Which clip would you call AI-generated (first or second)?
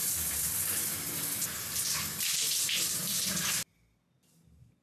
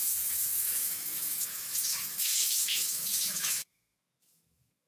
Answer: second